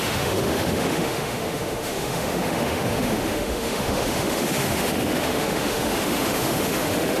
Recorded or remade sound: remade